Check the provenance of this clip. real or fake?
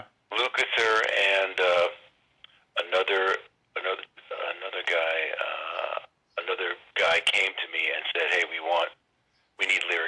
real